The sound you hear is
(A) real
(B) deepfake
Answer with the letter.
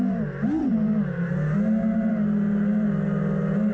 A